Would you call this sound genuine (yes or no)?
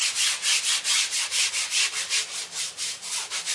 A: yes